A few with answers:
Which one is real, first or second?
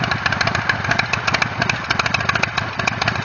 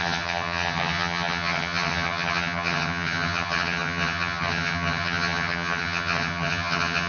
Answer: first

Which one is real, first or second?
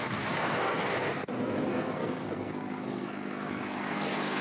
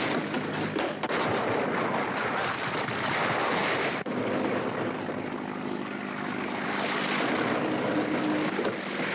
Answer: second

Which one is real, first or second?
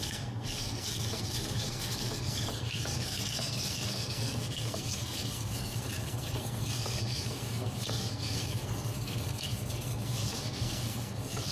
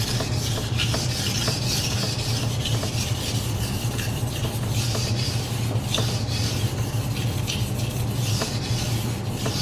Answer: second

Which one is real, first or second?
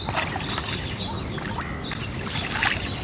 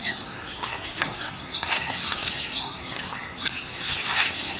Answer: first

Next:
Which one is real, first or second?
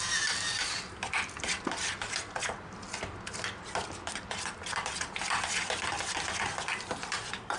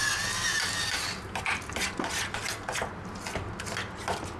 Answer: second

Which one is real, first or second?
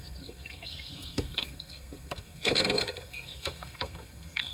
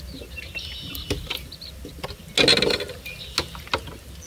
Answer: second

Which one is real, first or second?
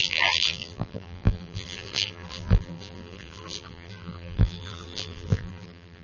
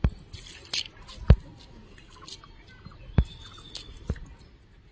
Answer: second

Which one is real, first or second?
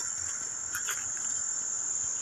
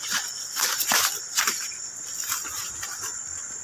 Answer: first